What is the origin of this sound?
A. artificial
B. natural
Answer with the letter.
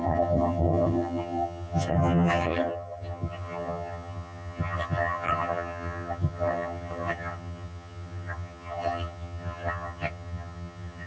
A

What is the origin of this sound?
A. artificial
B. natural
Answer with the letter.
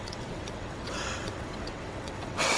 A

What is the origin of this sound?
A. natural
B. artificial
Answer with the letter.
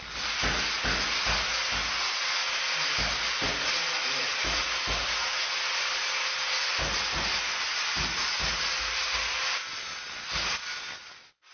A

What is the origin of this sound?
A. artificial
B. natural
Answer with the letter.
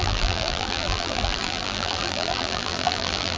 A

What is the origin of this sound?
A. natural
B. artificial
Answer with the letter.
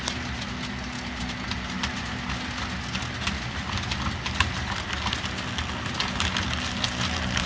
A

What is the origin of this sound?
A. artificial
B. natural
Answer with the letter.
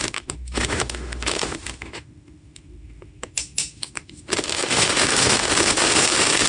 A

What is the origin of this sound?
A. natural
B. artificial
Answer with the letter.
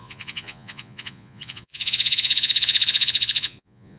B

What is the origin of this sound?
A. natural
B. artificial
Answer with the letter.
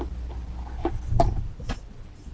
A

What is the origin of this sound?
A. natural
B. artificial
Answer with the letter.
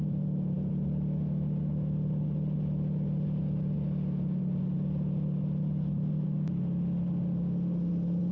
A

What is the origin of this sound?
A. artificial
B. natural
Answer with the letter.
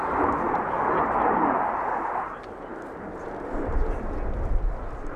B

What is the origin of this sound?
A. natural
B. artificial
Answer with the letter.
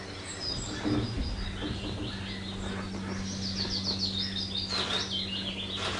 A